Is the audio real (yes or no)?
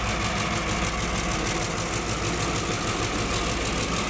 yes